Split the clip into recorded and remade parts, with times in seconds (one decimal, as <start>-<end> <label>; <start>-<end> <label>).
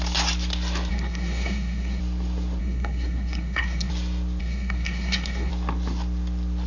0.0-0.9 recorded; 0.9-2.0 remade; 2.0-2.6 recorded; 2.6-3.9 remade; 3.9-4.4 recorded; 4.4-5.5 remade; 5.5-6.7 recorded